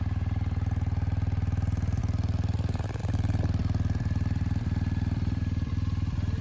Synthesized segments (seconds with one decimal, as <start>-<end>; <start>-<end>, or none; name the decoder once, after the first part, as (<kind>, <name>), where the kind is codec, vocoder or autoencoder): 0.0-2.0 (vocoder, BigVGAN v2); 3.0-6.4